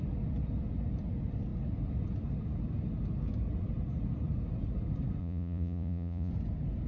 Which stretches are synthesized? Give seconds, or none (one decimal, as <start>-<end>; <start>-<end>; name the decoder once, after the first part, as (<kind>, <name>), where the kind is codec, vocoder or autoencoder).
5.2-6.3 (vocoder, Vocos)

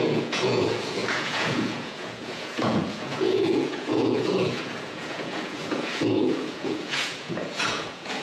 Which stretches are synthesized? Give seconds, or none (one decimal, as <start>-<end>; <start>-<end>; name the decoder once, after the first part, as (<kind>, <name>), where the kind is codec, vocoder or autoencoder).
0.0-8.2 (vocoder, Vocos)

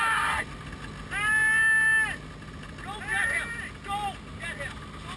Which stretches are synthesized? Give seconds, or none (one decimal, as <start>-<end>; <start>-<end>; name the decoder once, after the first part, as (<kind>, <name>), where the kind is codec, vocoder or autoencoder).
none